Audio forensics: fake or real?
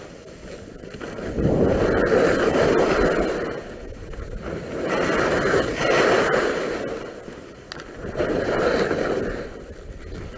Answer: real